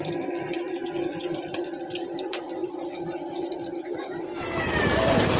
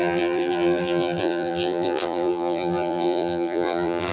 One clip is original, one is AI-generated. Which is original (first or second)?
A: first